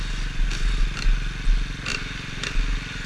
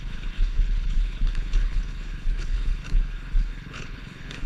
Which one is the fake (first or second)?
second